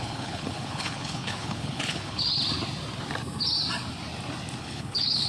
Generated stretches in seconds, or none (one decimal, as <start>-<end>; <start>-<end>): 0.0-2.3; 4.6-5.3